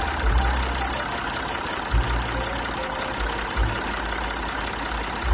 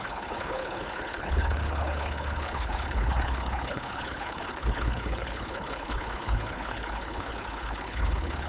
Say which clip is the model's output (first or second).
second